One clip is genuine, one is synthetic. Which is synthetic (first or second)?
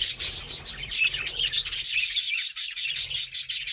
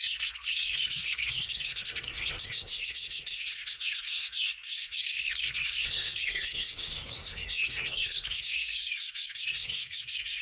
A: second